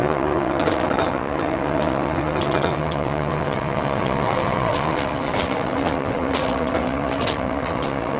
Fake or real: fake